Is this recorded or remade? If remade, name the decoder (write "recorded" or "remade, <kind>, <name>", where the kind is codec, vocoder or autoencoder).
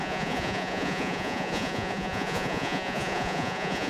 remade, vocoder, Vocos